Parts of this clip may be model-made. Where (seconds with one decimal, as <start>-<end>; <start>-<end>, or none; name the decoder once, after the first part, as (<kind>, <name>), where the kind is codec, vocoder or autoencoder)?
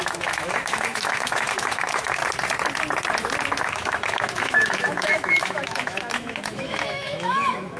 0.0-2.2 (autoencoder, DAC-VAE); 3.6-7.8